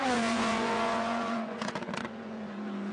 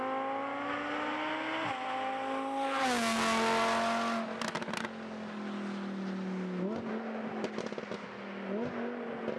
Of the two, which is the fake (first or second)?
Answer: first